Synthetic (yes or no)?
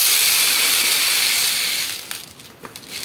no